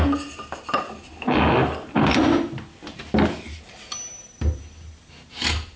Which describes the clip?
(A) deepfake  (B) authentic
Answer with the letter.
B